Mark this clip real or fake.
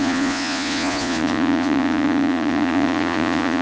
fake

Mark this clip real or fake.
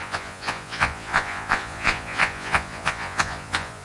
fake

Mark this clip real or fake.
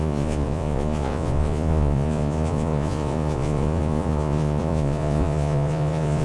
fake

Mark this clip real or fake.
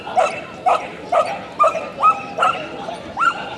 real